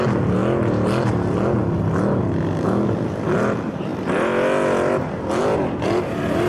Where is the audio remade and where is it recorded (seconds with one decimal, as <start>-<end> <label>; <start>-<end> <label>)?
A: 0.0-6.5 recorded